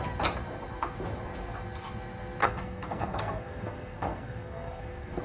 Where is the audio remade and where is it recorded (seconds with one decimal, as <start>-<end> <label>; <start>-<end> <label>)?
0.0-2.4 recorded; 2.4-5.2 remade